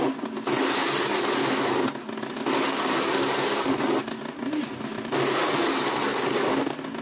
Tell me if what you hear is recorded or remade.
recorded